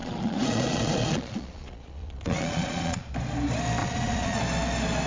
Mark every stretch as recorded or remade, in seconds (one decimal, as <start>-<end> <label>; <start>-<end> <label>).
0.0-3.1 remade; 3.1-3.8 recorded; 3.8-4.4 remade; 4.4-5.1 recorded